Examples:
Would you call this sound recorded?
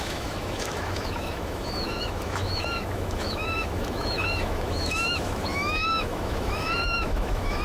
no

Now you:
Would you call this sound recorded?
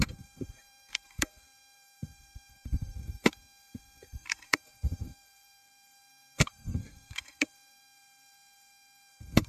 no